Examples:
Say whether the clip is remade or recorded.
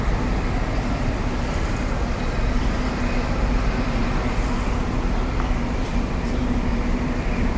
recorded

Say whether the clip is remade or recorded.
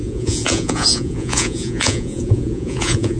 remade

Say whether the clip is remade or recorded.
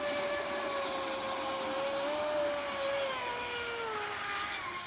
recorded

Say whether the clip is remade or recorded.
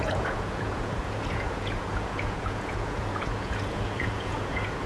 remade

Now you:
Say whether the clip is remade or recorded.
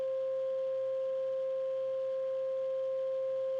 recorded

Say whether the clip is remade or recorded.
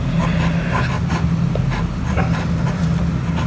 recorded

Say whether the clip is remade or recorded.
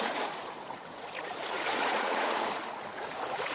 remade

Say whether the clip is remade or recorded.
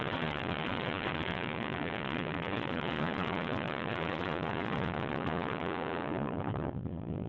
remade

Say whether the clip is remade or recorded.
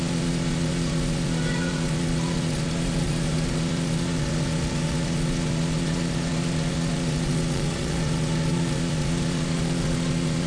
remade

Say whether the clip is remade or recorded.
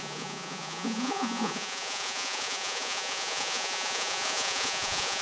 remade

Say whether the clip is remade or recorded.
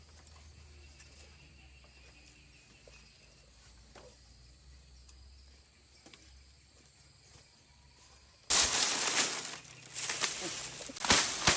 recorded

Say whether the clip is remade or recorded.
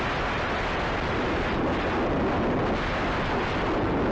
recorded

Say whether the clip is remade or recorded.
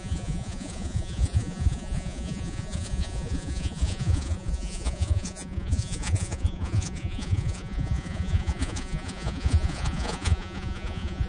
remade